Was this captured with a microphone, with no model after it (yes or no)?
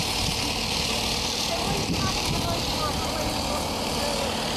no